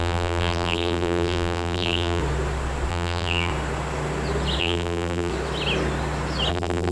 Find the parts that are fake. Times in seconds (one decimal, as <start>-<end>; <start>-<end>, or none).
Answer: 0.0-2.2; 2.9-3.5; 4.6-5.3; 6.5-6.9